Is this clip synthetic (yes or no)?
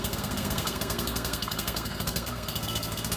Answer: yes